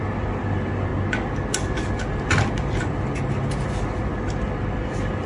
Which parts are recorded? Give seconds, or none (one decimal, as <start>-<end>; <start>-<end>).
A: 0.9-2.5; 4.1-4.7

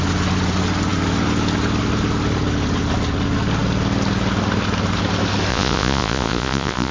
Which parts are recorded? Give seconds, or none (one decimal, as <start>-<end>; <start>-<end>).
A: 0.0-5.5

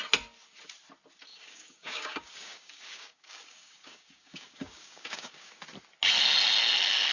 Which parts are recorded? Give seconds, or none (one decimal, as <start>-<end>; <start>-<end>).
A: 0.0-1.3; 5.6-7.1

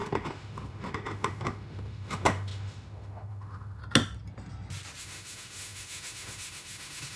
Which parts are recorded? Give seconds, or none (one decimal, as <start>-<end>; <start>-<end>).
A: 3.8-5.0

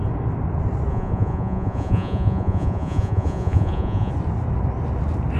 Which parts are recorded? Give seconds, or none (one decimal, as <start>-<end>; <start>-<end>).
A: 0.0-0.9; 4.1-5.4

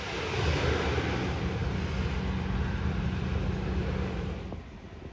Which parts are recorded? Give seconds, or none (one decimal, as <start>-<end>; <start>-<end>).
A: 0.0-5.1

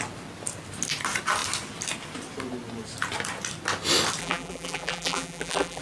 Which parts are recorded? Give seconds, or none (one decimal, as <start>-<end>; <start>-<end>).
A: 0.0-4.2

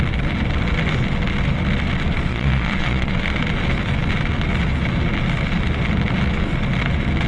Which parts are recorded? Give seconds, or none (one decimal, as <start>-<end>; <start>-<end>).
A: 0.0-2.3; 3.1-7.3